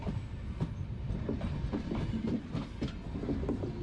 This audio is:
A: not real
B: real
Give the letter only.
B